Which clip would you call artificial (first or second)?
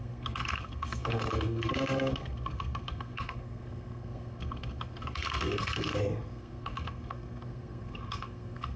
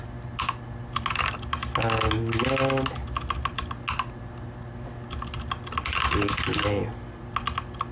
first